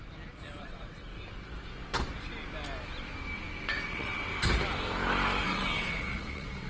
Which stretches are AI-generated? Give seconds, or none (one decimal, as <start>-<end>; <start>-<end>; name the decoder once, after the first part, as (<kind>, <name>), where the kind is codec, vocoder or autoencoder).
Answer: 0.6-1.1 (vocoder, WaveNeXt); 3.9-4.3; 5.4-6.7